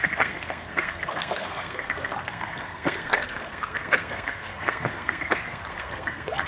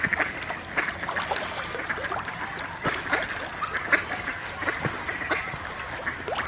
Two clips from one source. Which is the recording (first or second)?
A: second